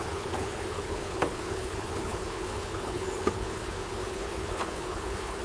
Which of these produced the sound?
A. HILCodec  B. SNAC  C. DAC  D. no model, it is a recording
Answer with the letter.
A